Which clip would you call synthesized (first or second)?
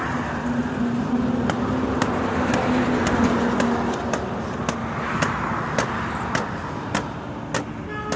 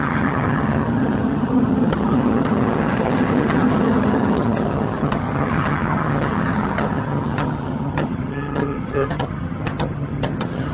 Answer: second